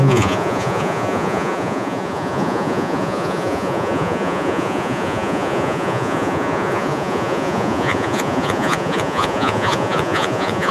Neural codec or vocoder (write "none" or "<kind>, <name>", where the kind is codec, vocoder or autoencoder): vocoder, Vocos